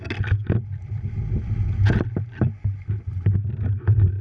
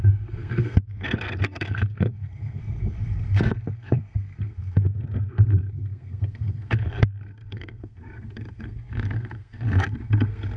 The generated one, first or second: second